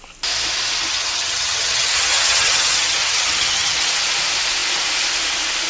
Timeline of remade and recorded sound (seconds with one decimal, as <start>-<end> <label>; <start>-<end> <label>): 0.0-0.8 recorded; 0.8-3.8 remade; 3.8-5.7 recorded